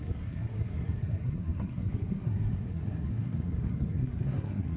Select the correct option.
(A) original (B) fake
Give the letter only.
B